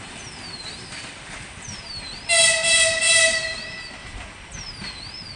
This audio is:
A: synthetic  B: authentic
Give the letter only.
B